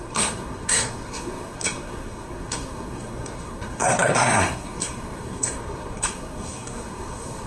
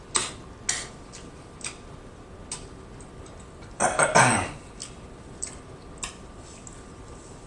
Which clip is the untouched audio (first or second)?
second